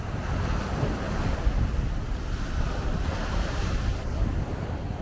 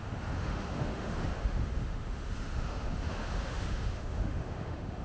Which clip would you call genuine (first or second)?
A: first